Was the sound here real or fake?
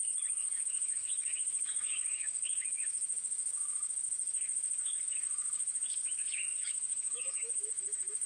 fake